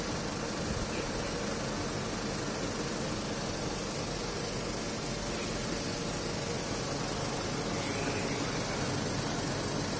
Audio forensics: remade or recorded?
recorded